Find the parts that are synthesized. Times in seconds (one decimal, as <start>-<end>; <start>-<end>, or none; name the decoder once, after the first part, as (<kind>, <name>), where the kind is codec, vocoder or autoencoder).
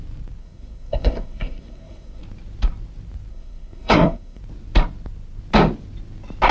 0.4-2.2 (codec, SNAC); 3.3-4.4